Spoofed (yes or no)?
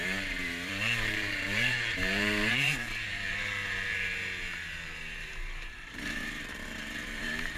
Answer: yes